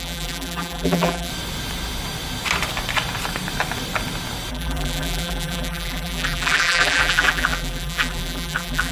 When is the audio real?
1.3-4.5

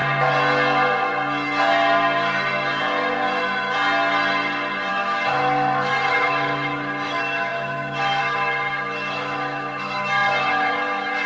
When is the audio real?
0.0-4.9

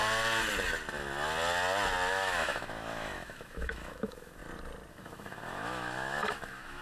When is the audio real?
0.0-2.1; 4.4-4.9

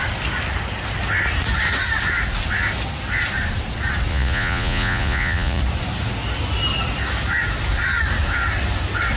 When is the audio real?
0.0-4.1; 5.6-9.2

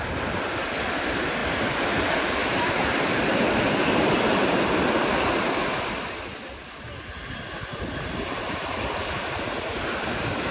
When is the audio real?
0.0-10.5